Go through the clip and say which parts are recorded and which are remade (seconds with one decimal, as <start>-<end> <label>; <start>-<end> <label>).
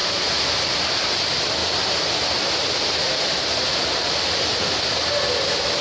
0.0-1.1 remade; 1.1-5.8 recorded